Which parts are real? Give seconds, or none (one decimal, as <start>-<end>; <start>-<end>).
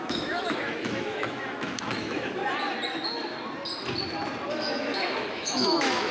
2.4-4.5